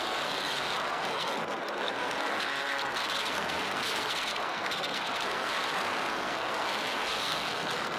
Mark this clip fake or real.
fake